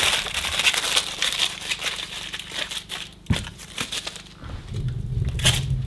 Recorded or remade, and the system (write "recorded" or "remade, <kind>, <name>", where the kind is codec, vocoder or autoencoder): recorded